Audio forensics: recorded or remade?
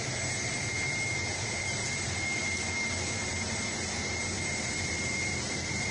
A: remade